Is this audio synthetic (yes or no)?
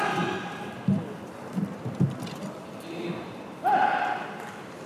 no